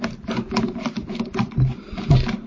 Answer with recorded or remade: recorded